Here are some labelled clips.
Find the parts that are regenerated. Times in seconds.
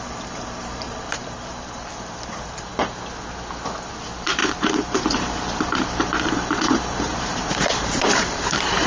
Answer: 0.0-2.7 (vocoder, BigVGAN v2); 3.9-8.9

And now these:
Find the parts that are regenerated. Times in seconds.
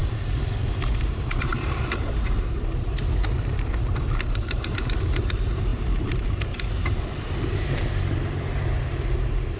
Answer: 0.9-9.6 (vocoder, BigVGAN v2)